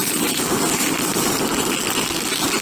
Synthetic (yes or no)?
yes